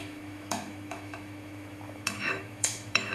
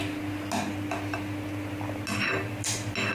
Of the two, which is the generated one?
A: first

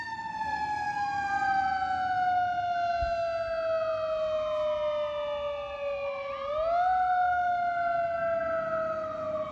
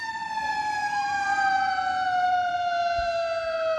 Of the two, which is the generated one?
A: second